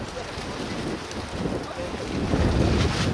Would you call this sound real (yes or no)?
yes